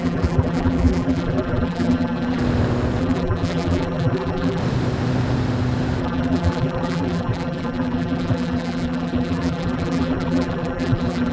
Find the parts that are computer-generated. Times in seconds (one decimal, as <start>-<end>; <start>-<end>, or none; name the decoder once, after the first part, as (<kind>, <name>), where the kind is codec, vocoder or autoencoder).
0.0-2.4 (vocoder, BigVGAN v2); 3.0-4.6; 6.0-11.3